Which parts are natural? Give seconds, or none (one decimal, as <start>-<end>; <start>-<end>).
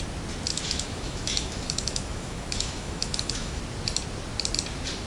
0.0-0.5; 3.6-5.1